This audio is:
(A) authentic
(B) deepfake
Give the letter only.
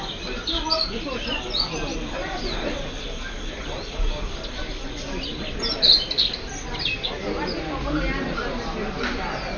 A